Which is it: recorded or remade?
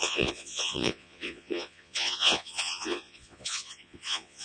remade